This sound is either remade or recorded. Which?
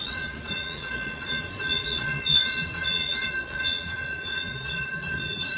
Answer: remade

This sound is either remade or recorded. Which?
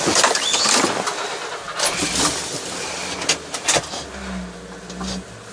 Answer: recorded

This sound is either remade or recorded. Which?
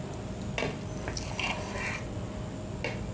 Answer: recorded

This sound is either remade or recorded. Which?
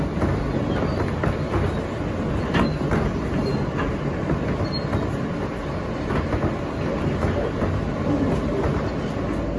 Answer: recorded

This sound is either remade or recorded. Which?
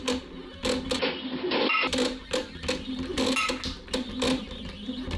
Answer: recorded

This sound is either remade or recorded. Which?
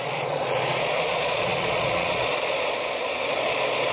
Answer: remade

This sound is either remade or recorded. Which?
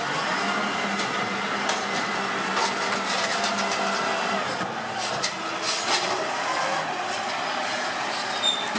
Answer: recorded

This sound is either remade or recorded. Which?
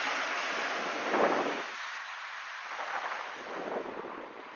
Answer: recorded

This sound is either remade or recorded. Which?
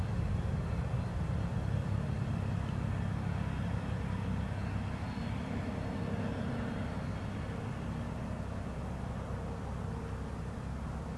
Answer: recorded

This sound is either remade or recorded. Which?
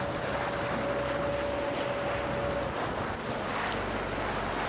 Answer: recorded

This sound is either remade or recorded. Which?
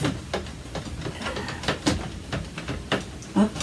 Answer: recorded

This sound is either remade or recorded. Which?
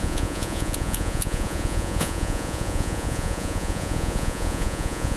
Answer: remade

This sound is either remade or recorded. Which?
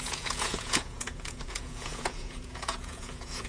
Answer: remade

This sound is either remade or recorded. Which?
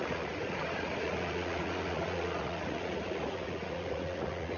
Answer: remade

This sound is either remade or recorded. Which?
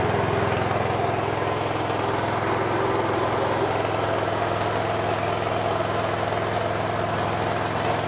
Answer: recorded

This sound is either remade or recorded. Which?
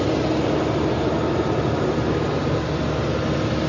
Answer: recorded